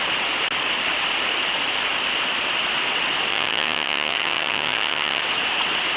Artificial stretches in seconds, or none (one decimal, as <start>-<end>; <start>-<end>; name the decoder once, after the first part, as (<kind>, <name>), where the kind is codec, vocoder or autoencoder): 3.3-5.2 (vocoder, HiFi-GAN)